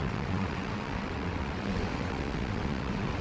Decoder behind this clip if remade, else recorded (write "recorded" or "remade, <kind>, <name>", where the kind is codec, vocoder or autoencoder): remade, vocoder, WaveNeXt